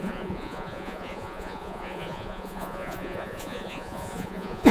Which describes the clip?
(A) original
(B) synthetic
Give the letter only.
B